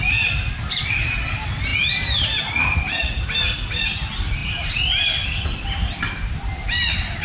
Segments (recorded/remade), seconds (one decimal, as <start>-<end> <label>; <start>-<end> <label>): 0.0-7.2 recorded